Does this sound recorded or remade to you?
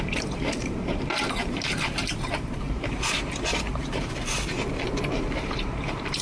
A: remade